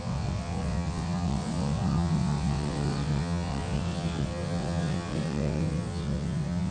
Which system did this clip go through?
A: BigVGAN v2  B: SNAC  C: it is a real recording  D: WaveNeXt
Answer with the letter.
D